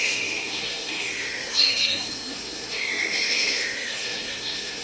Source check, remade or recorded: remade